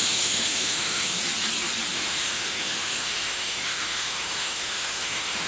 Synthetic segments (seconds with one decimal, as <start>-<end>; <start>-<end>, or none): 0.0-1.2; 1.9-5.5